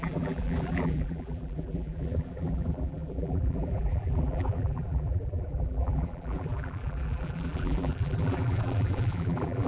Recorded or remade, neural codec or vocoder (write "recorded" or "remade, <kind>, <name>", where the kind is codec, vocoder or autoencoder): remade, vocoder, BigVGAN v2